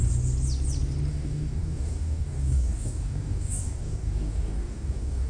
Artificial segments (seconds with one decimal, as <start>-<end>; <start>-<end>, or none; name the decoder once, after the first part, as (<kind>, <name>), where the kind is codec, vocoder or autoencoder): 1.1-5.3 (codec, DAC)